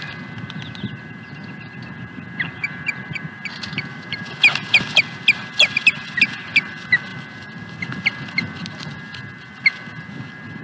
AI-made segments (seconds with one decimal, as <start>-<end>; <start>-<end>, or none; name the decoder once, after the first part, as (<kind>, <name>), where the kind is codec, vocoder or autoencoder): none